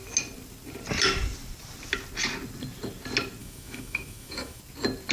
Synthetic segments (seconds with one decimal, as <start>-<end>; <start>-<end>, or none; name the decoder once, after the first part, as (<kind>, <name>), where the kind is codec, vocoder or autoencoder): 3.4-4.6 (autoencoder, DAC-VAE)